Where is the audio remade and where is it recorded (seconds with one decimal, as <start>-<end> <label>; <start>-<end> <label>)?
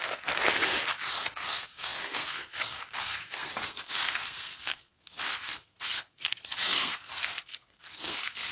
0.0-0.4 remade; 0.4-1.3 recorded; 1.3-8.5 remade